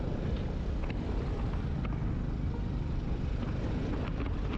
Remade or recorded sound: recorded